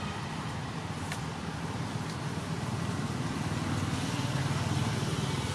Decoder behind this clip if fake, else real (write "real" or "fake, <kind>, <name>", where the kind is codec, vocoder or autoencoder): real